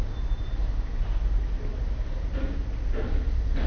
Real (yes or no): yes